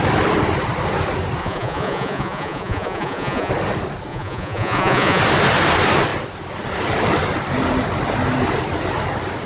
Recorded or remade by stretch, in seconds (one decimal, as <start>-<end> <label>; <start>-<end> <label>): 0.0-1.4 recorded; 1.4-3.5 remade; 3.5-4.1 recorded; 4.1-5.2 remade; 5.2-9.5 recorded